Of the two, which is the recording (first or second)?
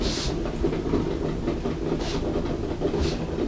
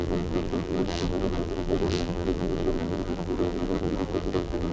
first